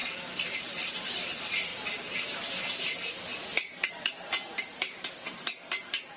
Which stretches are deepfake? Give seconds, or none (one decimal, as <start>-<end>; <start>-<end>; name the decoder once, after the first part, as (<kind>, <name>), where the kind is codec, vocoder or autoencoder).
1.0-1.7 (vocoder, BigVGAN v2); 3.9-6.2